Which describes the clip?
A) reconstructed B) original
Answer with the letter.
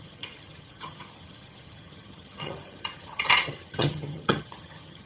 A